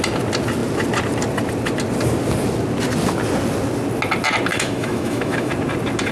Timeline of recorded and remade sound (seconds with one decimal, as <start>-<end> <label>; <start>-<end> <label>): 0.0-4.5 recorded; 4.5-5.5 remade; 5.5-6.1 recorded